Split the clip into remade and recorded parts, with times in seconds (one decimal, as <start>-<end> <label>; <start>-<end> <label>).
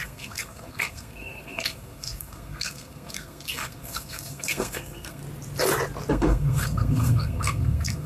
0.0-5.2 remade; 5.2-6.1 recorded; 6.1-8.1 remade